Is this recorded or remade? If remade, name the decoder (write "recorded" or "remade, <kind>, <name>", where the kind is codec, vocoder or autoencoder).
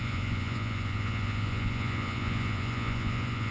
remade, vocoder, Vocos